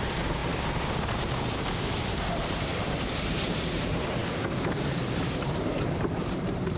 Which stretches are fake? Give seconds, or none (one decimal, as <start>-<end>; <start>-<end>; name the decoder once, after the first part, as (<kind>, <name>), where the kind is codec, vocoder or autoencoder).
0.0-0.4 (vocoder, BigVGAN v2); 2.0-4.2; 5.2-6.8